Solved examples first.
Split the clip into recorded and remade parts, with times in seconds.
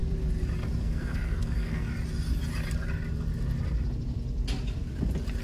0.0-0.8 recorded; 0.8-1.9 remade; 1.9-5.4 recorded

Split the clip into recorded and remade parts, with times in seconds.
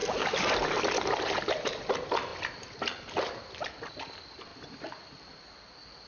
0.0-6.1 recorded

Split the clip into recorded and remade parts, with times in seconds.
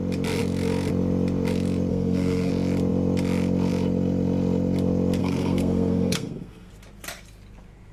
0.0-1.9 recorded; 1.9-2.5 remade; 2.5-5.2 recorded; 5.2-6.7 remade; 6.7-7.9 recorded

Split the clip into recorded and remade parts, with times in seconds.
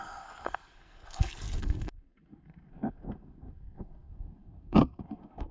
0.0-5.5 remade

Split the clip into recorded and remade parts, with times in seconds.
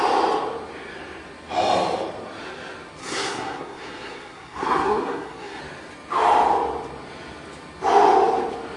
0.0-3.0 recorded; 3.0-5.6 remade; 5.6-8.8 recorded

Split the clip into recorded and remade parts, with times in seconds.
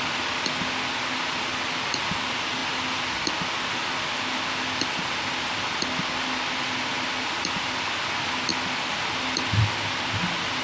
0.0-10.6 recorded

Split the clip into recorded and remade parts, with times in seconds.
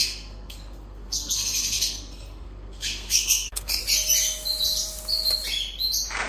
0.0-3.8 remade; 3.8-6.3 recorded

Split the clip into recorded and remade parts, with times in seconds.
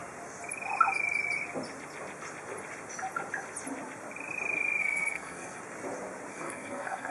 0.0-4.8 recorded; 4.8-5.6 remade; 5.6-6.3 recorded; 6.3-7.1 remade